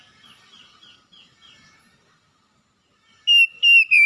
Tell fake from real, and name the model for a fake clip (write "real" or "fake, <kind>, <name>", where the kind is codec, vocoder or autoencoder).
real